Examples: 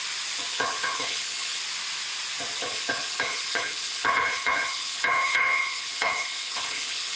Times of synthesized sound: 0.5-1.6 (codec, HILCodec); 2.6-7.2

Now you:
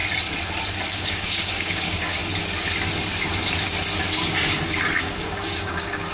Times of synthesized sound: 0.9-2.2 (codec, DAC); 5.0-6.1

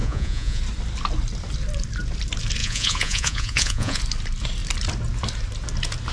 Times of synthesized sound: 0.0-0.6 (vocoder, Vocos); 2.6-4.0